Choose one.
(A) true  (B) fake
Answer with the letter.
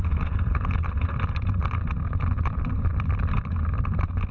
A